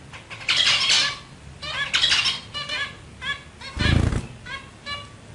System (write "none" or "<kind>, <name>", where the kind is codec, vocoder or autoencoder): none